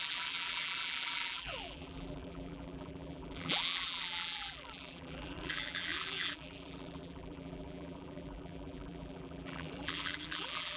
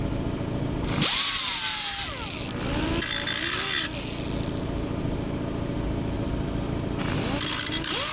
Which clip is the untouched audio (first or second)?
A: second